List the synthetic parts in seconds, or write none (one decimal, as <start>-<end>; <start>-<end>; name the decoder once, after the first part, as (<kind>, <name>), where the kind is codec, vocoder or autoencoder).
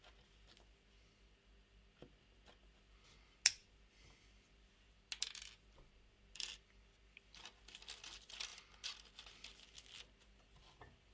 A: none